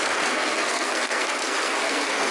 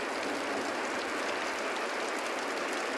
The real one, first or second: second